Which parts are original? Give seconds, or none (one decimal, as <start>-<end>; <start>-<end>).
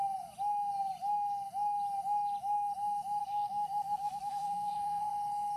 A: 0.0-3.2; 5.0-5.6